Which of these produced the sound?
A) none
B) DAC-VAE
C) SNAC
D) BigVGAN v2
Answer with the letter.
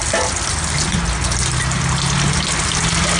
A